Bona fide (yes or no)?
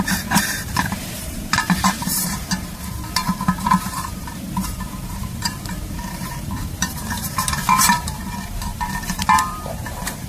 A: no